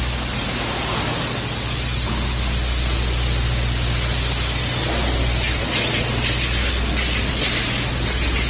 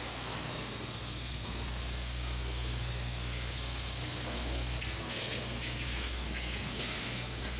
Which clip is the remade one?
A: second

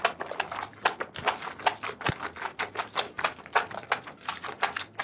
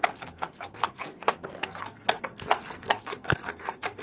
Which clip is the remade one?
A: second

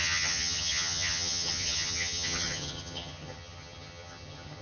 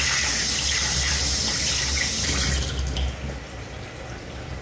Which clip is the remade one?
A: first